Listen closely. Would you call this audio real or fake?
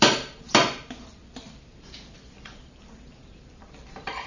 fake